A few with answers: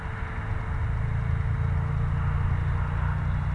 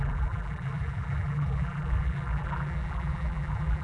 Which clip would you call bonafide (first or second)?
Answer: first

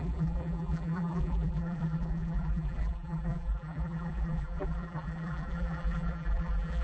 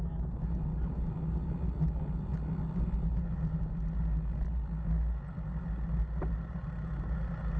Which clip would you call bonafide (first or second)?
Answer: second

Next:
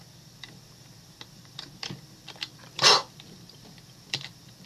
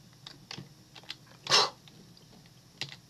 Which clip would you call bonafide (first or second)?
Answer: second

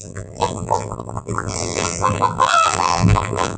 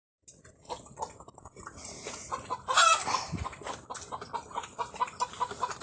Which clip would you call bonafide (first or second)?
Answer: second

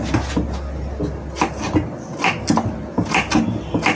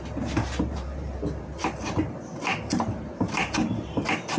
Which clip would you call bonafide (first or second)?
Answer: first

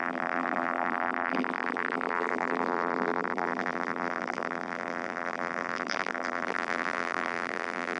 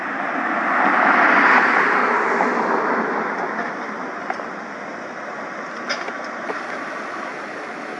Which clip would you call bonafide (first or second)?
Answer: second